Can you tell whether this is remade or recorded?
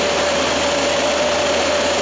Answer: recorded